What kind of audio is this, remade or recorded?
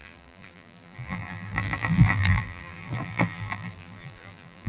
remade